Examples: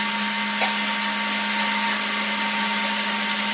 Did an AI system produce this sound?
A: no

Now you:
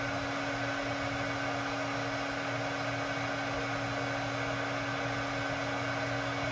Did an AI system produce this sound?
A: no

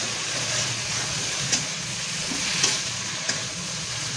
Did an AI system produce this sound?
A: yes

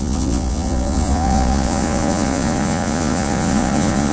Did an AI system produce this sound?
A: yes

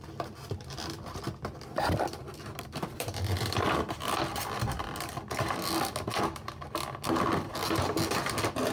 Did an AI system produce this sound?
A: no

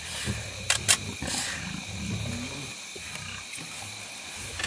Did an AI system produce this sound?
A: no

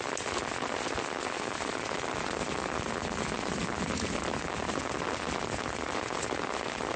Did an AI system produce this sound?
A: no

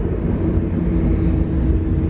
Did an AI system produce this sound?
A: no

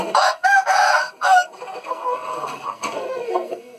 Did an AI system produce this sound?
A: yes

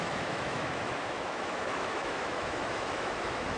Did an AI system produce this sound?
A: yes